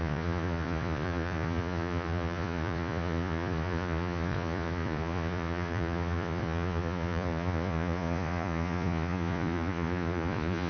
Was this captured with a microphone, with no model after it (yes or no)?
no